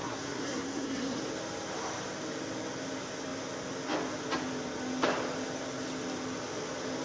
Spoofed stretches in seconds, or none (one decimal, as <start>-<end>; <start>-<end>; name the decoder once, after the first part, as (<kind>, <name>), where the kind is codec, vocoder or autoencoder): 0.0-1.2 (codec, SNAC)